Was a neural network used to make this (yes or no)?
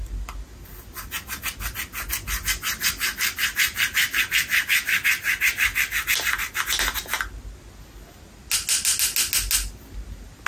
no